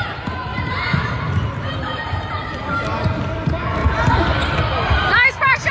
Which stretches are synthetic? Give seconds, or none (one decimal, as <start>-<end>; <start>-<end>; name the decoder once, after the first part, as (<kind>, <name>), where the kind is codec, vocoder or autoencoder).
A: 0.5-1.3 (vocoder, BigVGAN v2); 1.8-2.5